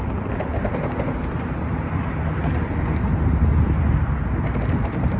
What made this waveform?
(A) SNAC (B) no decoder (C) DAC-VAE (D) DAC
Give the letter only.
B